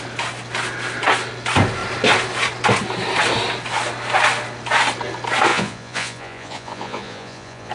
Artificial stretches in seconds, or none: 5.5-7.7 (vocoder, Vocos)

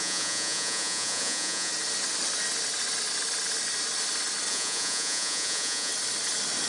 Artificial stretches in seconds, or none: 0.0-1.7 (vocoder, Vocos); 4.5-5.9